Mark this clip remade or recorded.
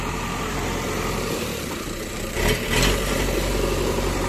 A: remade